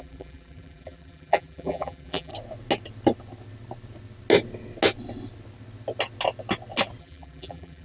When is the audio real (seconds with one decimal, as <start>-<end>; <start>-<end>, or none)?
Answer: 2.3-7.0